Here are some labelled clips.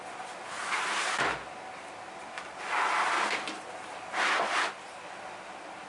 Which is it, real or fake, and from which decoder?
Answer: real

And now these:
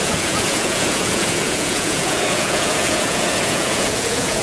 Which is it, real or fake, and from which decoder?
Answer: fake, vocoder, Vocos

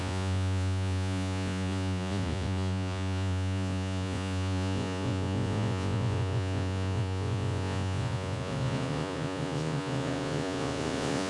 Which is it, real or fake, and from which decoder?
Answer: fake, vocoder, Vocos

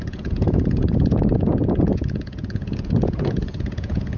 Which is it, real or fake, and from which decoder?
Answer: fake, vocoder, Vocos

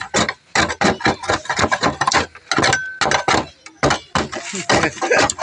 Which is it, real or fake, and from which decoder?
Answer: real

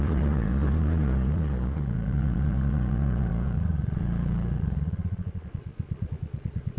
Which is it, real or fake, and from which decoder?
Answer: fake, vocoder, Vocos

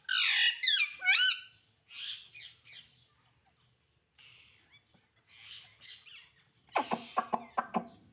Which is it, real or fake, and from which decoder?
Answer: real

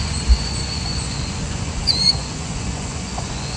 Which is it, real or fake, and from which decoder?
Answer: fake, vocoder, Vocos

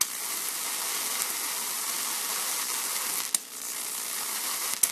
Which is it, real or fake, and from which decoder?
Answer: real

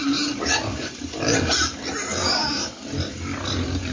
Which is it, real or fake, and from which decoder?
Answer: real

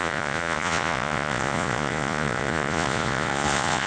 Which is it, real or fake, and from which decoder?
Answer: fake, vocoder, Vocos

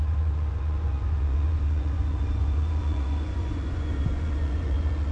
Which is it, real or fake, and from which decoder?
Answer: fake, vocoder, Vocos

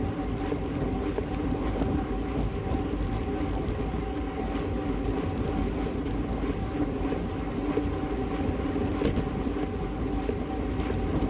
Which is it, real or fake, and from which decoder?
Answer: real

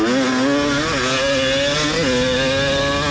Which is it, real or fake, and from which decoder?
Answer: real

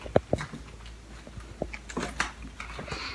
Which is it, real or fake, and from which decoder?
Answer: real